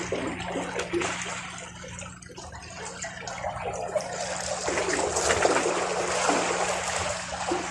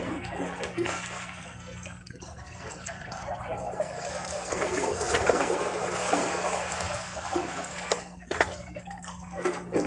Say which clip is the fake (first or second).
second